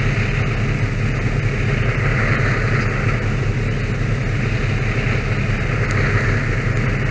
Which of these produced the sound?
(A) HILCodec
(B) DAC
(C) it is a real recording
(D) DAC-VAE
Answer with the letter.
C